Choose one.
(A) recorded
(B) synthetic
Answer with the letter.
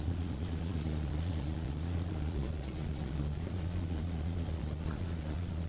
B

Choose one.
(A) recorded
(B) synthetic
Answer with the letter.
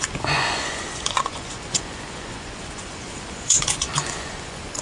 B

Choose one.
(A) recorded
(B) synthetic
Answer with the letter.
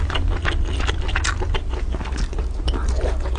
A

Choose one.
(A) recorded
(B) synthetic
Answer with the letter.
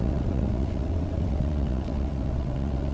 B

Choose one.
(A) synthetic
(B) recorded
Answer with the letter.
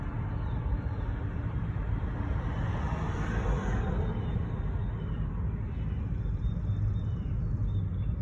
B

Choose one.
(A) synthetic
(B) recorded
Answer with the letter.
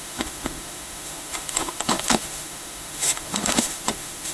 A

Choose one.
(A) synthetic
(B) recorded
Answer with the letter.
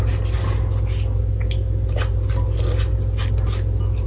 B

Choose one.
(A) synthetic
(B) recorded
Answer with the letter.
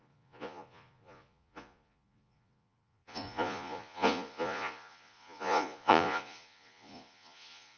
A